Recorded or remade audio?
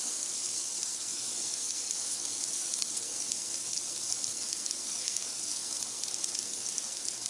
remade